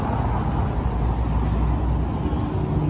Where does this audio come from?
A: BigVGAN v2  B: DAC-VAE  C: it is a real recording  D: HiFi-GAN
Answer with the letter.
C